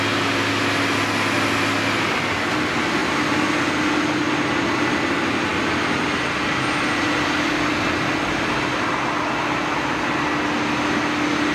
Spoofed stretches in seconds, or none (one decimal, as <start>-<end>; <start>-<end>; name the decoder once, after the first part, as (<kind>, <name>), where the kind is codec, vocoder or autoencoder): none